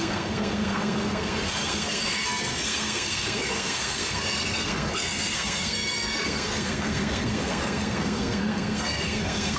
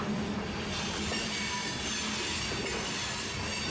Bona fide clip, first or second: second